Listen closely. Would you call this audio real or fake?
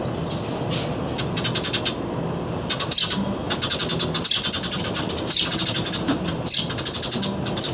real